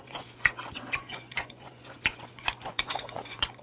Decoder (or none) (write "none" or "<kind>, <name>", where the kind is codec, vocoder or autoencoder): vocoder, Vocos